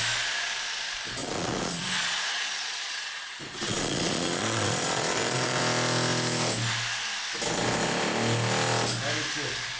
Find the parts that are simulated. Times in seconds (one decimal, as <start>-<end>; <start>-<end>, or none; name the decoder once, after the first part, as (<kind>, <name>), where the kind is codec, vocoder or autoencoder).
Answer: 1.2-5.6 (vocoder, Vocos)